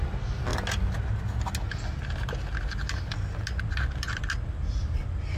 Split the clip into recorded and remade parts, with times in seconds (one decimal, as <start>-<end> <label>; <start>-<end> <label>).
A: 0.0-5.4 recorded